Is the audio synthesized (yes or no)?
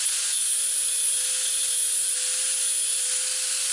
no